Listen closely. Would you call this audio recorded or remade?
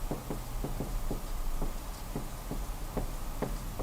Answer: recorded